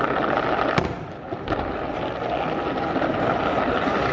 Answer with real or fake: real